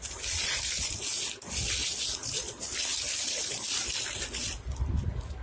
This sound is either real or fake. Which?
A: real